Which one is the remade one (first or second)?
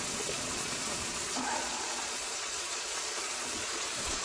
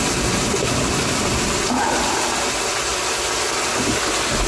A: first